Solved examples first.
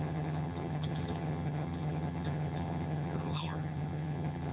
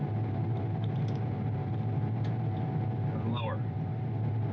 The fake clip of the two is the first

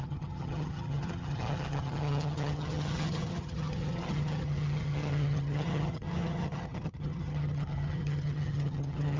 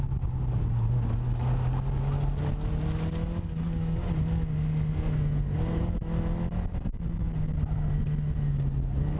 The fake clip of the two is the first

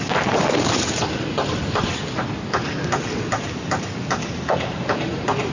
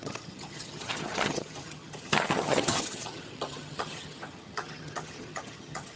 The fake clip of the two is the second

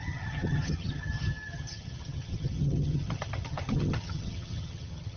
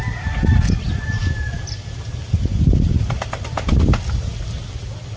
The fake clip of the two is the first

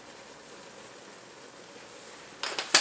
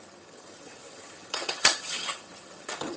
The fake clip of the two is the second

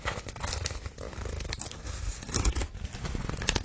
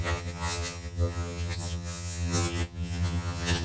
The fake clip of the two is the second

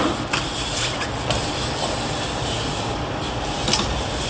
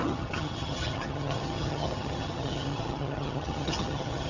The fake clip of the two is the second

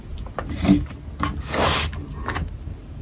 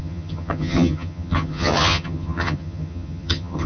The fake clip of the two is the second